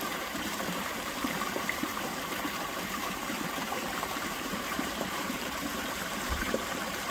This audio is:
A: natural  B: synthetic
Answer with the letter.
B